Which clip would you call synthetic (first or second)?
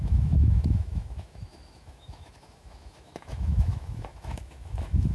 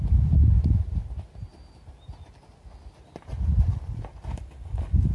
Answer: first